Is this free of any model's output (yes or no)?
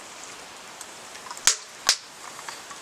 yes